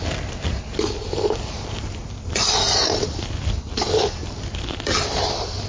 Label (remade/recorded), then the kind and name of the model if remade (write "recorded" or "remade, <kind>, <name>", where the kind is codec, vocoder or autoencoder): recorded